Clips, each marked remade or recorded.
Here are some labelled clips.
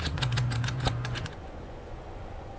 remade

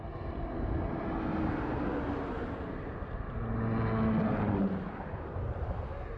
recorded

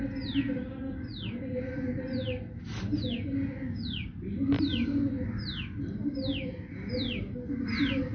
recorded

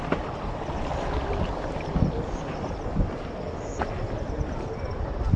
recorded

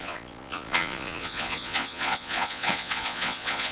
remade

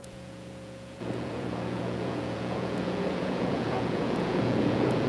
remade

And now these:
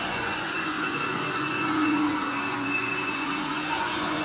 remade